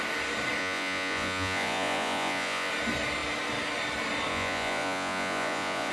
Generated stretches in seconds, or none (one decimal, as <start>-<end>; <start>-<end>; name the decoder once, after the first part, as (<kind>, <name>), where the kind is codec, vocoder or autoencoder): 0.6-2.7 (vocoder, Vocos); 4.3-5.9